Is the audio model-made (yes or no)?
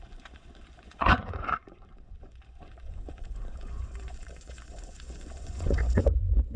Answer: yes